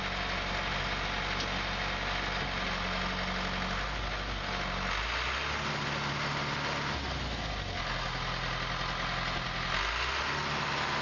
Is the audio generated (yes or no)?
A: no